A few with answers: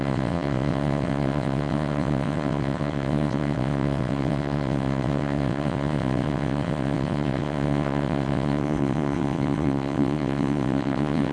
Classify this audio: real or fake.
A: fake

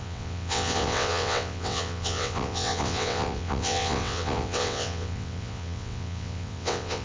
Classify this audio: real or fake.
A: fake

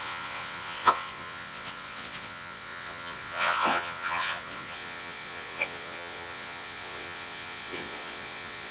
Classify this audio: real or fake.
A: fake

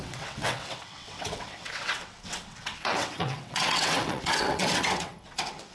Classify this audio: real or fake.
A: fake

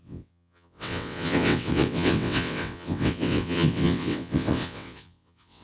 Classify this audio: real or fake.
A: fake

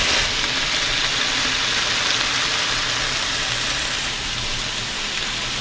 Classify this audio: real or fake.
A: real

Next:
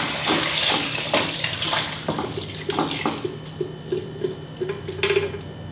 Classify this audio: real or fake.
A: real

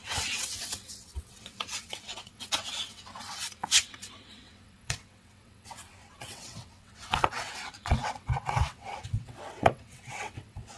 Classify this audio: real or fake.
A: fake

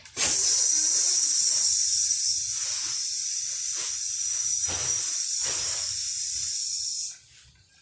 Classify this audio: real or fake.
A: real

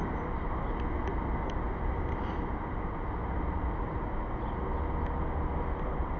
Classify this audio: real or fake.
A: real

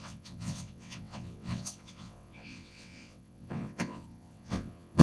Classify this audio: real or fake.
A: fake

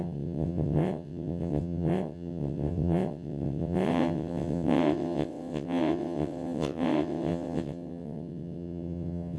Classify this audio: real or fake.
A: fake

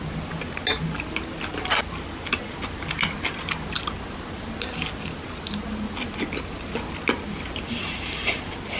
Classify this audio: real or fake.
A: real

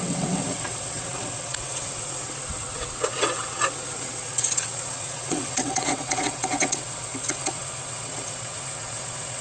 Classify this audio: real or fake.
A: fake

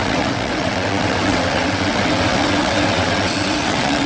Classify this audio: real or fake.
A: fake